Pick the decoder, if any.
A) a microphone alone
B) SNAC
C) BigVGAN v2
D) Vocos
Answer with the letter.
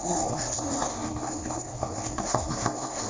B